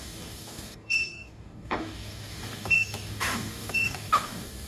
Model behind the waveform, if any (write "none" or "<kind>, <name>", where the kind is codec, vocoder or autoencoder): codec, DAC